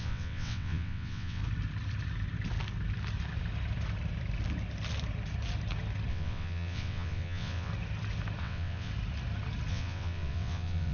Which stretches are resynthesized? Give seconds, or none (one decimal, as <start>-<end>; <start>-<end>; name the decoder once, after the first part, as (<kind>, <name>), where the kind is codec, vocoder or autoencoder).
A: 0.0-1.4 (vocoder, WaveNeXt); 6.1-7.7; 8.4-8.9; 9.7-10.9